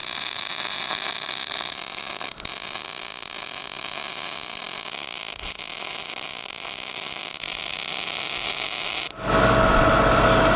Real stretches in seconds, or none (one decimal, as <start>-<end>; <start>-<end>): 0.0-10.6